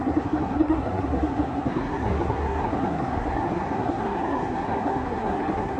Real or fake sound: fake